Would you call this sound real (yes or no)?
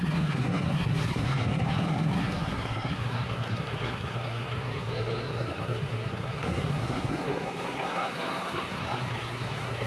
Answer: no